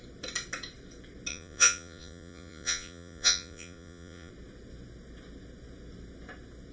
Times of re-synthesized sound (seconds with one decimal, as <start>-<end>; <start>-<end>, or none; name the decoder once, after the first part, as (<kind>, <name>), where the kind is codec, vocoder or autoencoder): 1.3-4.3 (vocoder, Vocos)